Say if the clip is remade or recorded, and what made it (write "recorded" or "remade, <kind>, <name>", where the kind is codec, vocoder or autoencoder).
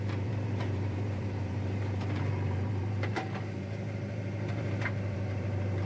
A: remade, vocoder, BigVGAN v2